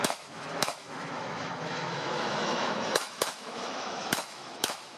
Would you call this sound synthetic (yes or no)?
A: yes